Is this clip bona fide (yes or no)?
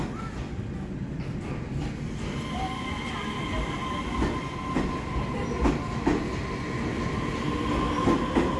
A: yes